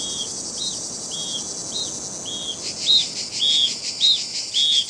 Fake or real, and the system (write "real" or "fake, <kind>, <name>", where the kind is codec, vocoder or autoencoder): real